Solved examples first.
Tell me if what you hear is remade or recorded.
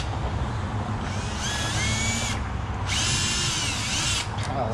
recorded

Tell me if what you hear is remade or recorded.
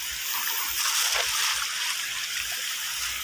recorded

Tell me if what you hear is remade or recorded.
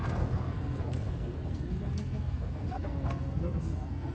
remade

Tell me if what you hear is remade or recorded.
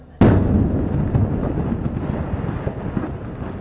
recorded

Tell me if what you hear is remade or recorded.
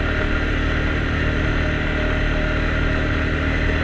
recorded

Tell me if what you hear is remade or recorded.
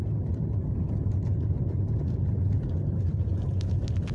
remade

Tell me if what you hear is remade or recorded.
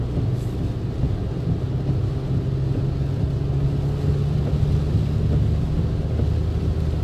recorded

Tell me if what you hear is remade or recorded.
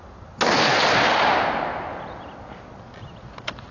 recorded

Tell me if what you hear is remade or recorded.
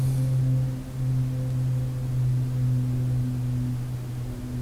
recorded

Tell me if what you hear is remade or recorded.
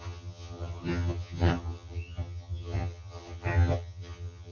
remade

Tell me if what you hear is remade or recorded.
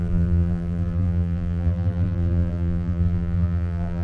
remade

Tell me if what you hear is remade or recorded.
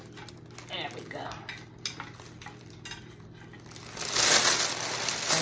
recorded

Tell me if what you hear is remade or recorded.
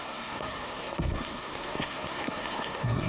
remade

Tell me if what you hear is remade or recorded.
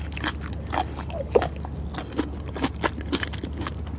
recorded